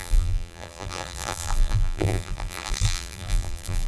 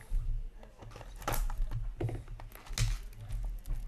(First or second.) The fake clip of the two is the first